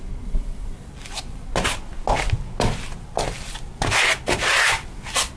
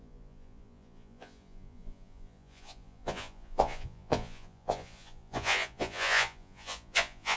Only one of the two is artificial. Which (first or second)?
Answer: second